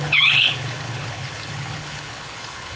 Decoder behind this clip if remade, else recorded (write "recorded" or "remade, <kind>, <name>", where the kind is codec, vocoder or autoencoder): remade, codec, HILCodec